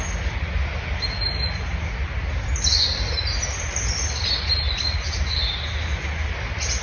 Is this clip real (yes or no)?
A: yes